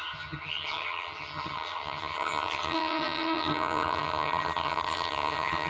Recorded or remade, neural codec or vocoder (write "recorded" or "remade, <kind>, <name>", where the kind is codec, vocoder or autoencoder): remade, vocoder, HiFi-GAN